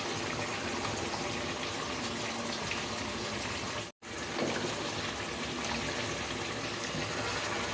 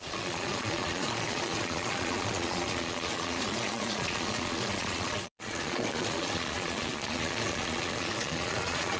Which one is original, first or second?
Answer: first